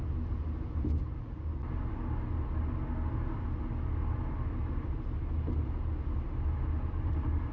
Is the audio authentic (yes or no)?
yes